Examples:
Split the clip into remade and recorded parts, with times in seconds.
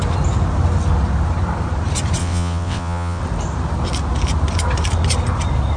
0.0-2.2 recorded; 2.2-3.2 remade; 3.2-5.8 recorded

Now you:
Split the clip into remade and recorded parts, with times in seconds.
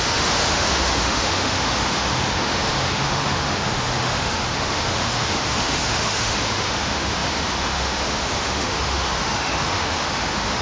0.0-10.6 remade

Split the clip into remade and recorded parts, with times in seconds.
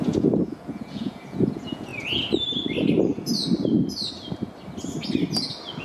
0.0-1.9 remade; 1.9-5.8 recorded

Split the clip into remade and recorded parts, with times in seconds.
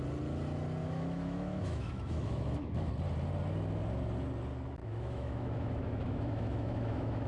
0.0-0.8 recorded; 0.8-2.9 remade; 2.9-4.8 recorded; 4.8-7.3 remade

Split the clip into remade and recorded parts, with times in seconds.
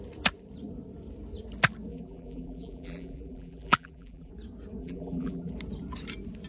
0.0-1.9 recorded; 1.9-4.3 remade; 4.3-4.8 recorded; 4.8-5.5 remade; 5.5-6.5 recorded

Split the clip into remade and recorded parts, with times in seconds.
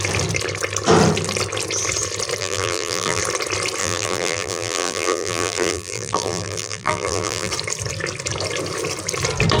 0.0-2.4 recorded; 2.4-3.2 remade; 3.2-3.8 recorded; 3.8-7.5 remade; 7.5-9.6 recorded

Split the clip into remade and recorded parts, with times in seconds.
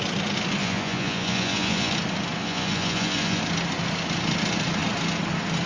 0.0-0.6 recorded; 0.6-1.9 remade; 1.9-2.4 recorded; 2.4-3.4 remade; 3.4-5.7 recorded